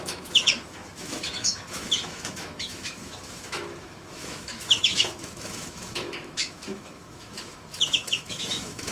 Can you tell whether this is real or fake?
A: fake